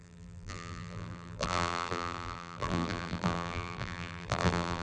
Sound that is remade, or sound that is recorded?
remade